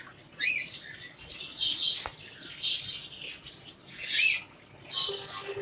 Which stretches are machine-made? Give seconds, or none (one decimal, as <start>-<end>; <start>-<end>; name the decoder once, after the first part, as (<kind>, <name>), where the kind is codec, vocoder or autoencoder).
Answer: none